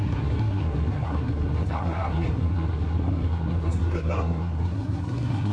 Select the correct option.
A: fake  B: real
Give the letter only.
A